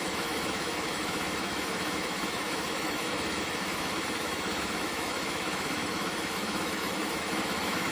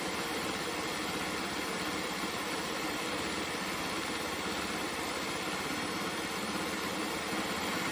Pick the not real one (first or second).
first